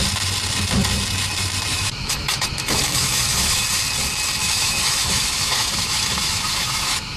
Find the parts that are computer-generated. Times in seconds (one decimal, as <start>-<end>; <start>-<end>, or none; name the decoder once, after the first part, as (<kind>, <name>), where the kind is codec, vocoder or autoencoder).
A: 1.7-3.6 (autoencoder, DAC-VAE); 4.4-7.2